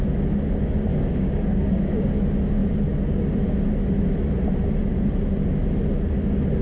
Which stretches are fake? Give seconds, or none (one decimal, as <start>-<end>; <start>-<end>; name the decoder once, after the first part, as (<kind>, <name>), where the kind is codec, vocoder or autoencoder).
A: 0.9-2.1 (codec, DAC)